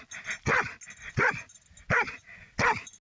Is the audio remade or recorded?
recorded